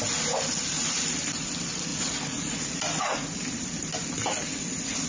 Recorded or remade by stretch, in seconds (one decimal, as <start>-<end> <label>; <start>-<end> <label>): 0.0-1.9 recorded; 1.9-3.4 remade; 3.4-5.1 recorded